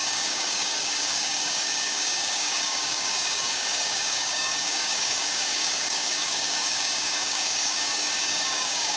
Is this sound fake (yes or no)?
yes